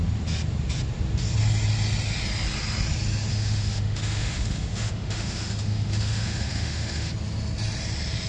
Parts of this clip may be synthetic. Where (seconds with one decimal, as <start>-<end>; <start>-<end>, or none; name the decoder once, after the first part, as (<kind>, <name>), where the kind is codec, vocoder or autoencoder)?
3.3-7.1 (autoencoder, DAC-VAE)